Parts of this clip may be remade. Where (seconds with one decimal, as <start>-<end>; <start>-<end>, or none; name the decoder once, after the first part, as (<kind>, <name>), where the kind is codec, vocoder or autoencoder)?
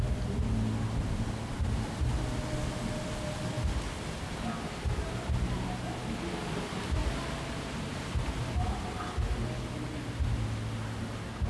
none